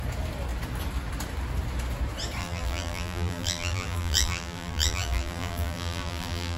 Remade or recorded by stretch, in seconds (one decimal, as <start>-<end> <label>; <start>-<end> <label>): 0.0-2.4 recorded; 2.4-6.6 remade

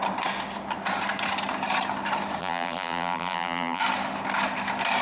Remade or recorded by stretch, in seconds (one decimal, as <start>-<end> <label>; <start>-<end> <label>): 0.0-2.4 recorded; 2.4-3.8 remade; 3.8-5.0 recorded